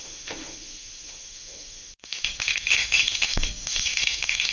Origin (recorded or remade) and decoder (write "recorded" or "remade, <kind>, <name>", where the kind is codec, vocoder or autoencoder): remade, autoencoder, DAC-VAE